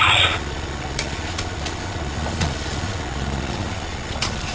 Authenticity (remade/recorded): remade